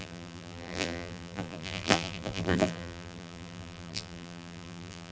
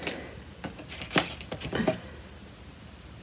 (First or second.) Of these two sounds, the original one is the second